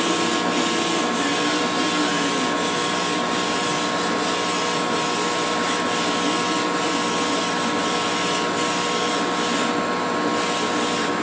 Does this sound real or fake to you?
real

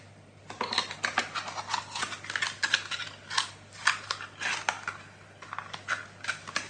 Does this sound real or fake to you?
real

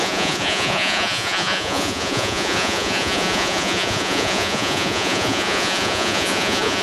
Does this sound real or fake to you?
fake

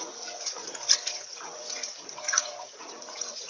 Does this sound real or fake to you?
fake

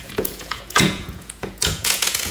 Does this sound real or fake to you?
fake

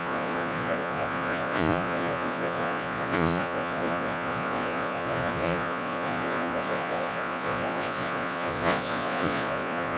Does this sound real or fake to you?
fake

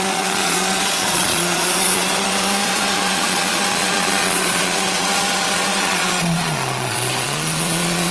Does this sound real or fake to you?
fake